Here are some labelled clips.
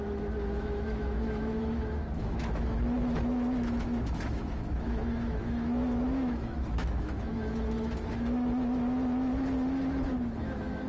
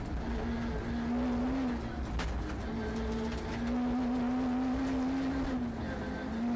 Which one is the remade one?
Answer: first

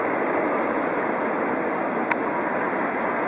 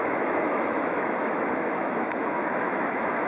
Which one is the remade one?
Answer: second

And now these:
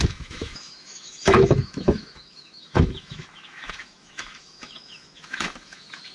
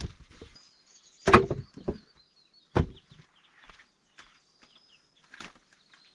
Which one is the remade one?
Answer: first